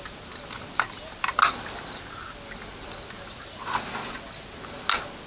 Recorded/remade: recorded